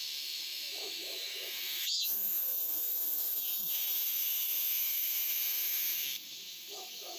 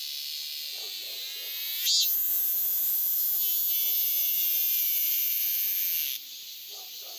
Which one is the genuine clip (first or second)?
second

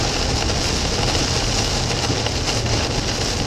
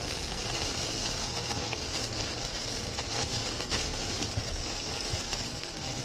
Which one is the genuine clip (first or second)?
first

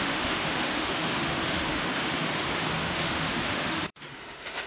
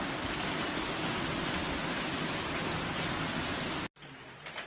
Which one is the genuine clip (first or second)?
second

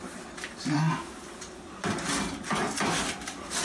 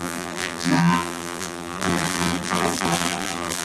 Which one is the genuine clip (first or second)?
first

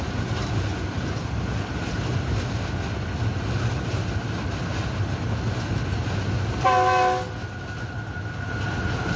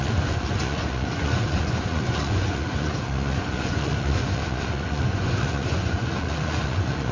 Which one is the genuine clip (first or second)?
first